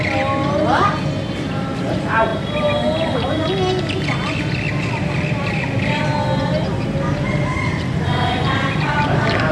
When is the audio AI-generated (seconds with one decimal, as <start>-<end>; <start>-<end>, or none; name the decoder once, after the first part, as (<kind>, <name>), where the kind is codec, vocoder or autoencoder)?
none